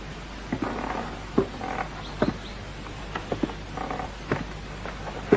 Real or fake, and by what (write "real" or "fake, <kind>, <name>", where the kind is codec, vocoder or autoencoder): real